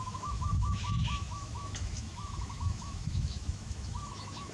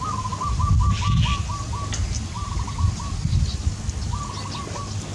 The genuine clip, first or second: second